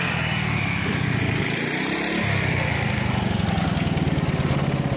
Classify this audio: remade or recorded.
recorded